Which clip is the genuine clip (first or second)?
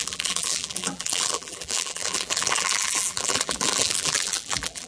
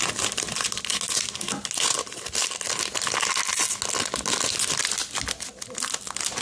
second